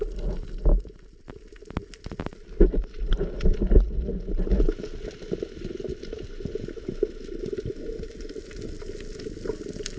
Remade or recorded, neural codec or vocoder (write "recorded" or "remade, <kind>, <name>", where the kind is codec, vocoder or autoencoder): recorded